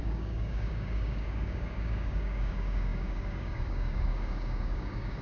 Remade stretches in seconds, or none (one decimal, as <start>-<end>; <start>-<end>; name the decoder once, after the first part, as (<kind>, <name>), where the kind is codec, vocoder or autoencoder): 0.0-5.2 (codec, DAC)